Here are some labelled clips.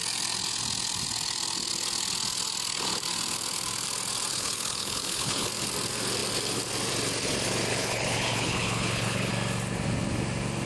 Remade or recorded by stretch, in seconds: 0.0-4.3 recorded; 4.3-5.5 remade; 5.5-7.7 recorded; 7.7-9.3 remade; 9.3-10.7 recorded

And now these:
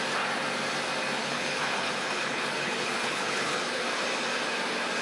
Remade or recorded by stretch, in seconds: 0.0-1.2 recorded; 1.2-3.8 remade; 3.8-5.0 recorded

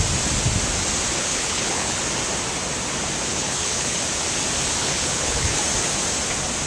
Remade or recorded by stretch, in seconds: 0.0-1.1 recorded; 1.1-2.0 remade; 2.0-3.3 recorded; 3.3-4.0 remade; 4.0-4.8 recorded; 4.8-5.6 remade; 5.6-6.7 recorded